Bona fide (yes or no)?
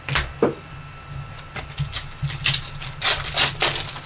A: yes